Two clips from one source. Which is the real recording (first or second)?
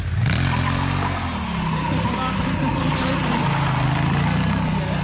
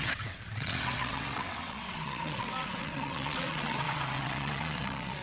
first